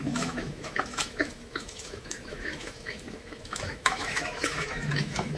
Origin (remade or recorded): remade